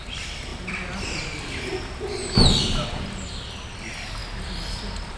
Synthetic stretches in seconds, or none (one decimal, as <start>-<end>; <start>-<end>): 0.0-1.7; 3.6-4.2; 4.7-5.2